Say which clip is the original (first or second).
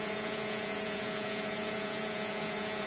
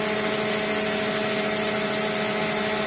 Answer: second